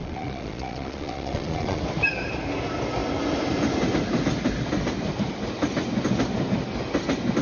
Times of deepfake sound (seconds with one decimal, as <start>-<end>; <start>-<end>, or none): 0.0-1.8